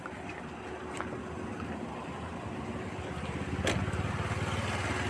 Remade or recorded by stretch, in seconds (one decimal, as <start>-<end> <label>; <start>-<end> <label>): 0.0-1.5 recorded; 1.5-4.1 remade; 4.1-5.1 recorded